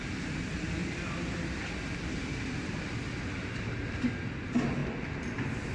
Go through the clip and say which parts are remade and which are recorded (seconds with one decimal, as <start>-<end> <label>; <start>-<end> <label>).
0.0-0.8 recorded; 0.8-4.2 remade; 4.2-5.7 recorded